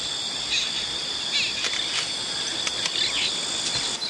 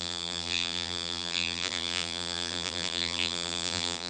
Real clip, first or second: first